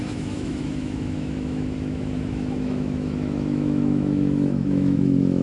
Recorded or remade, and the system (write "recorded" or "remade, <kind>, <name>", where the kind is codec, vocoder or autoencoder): remade, autoencoder, DAC-VAE